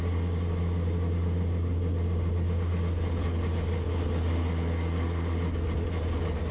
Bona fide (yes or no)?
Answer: yes